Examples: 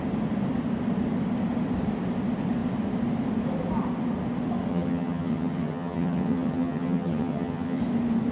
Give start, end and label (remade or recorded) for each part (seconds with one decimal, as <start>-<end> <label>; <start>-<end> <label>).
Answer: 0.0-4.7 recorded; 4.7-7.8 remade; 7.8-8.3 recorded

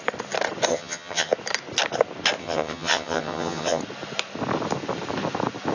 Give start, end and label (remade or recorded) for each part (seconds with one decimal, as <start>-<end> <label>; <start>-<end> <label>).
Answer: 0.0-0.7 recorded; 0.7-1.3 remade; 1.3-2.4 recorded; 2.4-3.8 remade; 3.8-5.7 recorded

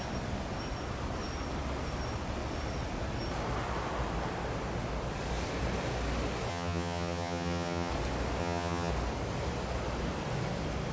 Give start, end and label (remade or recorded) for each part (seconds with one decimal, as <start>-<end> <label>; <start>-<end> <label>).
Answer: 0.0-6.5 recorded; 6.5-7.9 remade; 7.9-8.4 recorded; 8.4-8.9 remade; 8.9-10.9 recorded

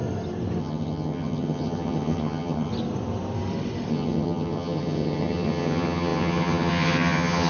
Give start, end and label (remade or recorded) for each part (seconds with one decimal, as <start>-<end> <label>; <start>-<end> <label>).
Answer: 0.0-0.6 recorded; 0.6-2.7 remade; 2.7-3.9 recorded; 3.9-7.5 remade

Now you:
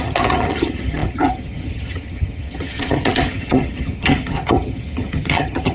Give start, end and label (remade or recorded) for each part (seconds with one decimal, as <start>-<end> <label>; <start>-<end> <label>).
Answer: 0.0-5.7 remade

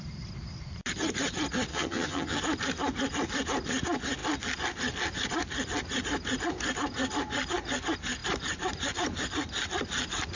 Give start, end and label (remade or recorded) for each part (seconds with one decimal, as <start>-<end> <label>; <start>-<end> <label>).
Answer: 0.0-1.7 recorded; 1.7-2.4 remade; 2.4-10.4 recorded

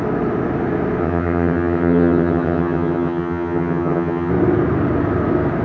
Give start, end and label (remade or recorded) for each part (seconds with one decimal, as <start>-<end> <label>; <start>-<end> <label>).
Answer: 0.0-1.0 recorded; 1.0-4.3 remade; 4.3-5.6 recorded